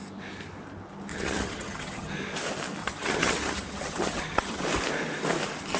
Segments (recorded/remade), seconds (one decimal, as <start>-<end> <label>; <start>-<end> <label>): 0.0-1.1 recorded; 1.1-2.1 remade; 2.1-2.8 recorded; 2.8-4.6 remade; 4.6-5.8 recorded